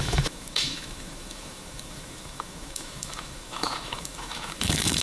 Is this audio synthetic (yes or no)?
yes